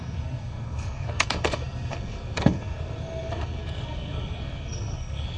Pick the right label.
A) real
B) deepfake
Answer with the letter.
B